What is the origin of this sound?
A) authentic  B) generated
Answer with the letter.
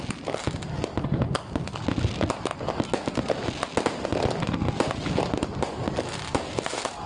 A